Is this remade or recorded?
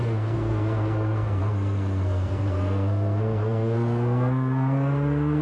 remade